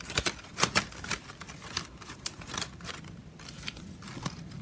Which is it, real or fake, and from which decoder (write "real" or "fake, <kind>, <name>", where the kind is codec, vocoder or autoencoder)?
real